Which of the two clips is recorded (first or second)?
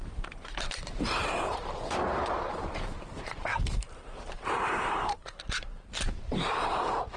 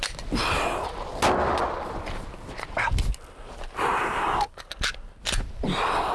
second